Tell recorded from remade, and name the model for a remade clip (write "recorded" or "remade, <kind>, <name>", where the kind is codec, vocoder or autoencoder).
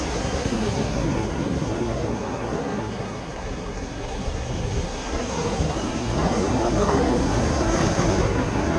remade, codec, SNAC